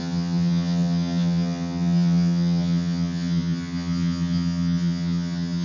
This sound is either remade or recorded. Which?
remade